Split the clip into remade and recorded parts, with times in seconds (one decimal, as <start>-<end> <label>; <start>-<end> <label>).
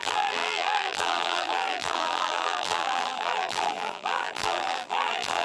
0.0-5.4 remade